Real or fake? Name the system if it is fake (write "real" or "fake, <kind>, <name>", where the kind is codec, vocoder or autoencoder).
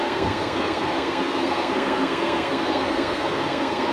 fake, codec, SNAC